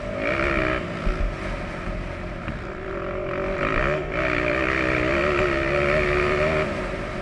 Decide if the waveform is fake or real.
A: real